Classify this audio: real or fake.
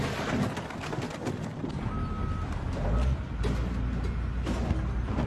real